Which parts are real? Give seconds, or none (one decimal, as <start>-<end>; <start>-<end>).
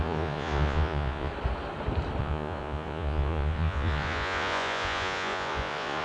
1.3-2.2